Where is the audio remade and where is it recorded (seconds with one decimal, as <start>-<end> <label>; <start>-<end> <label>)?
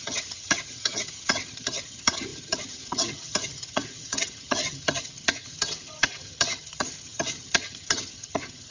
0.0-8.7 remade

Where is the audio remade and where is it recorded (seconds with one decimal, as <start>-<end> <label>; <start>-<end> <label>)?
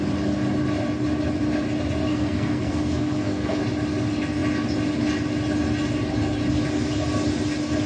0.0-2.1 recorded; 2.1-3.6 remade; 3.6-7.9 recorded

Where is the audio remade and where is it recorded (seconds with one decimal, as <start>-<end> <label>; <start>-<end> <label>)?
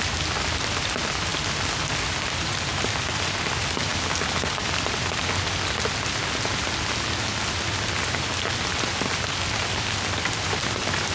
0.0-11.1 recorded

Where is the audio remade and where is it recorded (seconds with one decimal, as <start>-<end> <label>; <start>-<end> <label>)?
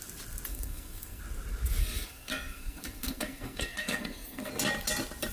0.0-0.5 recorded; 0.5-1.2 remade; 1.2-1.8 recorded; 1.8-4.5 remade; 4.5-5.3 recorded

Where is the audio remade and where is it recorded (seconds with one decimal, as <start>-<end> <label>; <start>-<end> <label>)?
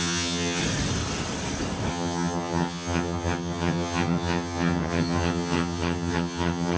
0.0-0.6 remade; 0.6-1.9 recorded; 1.9-6.8 remade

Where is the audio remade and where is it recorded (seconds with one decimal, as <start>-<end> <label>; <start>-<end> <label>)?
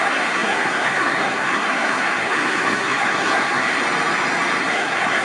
0.0-3.8 remade; 3.8-4.6 recorded; 4.6-5.2 remade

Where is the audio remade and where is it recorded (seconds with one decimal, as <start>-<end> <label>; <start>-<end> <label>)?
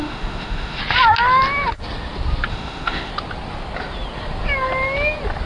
0.0-0.8 remade; 0.8-2.5 recorded; 2.5-3.1 remade; 3.1-5.5 recorded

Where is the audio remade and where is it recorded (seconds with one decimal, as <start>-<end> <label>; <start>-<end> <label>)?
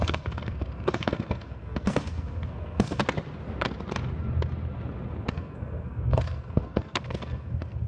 0.0-3.0 remade; 3.0-5.3 recorded; 5.3-7.9 remade